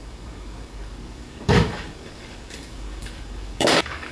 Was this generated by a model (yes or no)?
yes